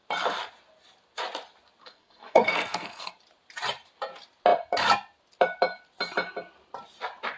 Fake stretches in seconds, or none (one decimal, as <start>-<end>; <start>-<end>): 1.8-3.1